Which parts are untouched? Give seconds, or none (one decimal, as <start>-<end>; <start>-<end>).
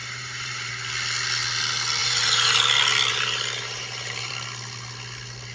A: 0.7-2.0; 2.6-3.1; 4.3-5.5